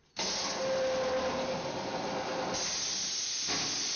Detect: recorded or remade recorded